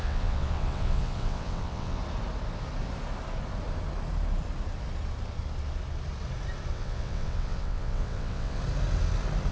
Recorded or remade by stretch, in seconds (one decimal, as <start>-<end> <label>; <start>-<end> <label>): 0.0-2.0 remade; 2.0-6.7 recorded; 6.7-8.6 remade; 8.6-9.5 recorded